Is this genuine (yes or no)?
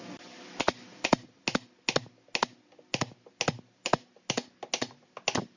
yes